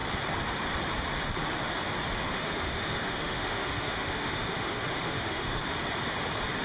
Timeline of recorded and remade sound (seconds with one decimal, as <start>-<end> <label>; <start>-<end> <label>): 0.0-2.2 recorded; 2.2-5.6 remade; 5.6-6.6 recorded